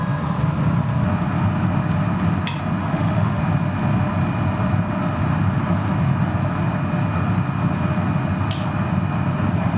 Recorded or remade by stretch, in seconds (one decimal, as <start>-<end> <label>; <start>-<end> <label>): 0.0-2.8 recorded; 2.8-3.4 remade; 3.4-9.8 recorded